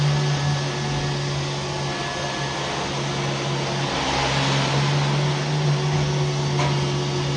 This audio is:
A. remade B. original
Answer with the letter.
B